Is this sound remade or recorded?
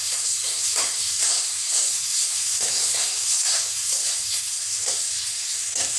remade